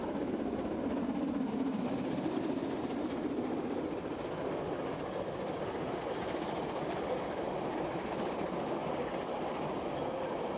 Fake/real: real